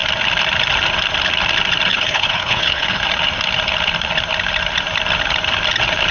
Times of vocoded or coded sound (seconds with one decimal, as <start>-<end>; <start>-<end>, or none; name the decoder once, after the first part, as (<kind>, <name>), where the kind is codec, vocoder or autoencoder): 1.9-3.0 (codec, HILCodec)